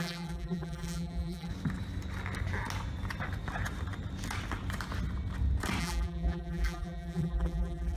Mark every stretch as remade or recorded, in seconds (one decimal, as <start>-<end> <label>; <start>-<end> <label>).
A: 0.0-1.5 remade; 1.5-5.8 recorded; 5.8-8.0 remade